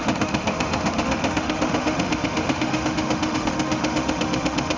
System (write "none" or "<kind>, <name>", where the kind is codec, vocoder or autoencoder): autoencoder, DAC-VAE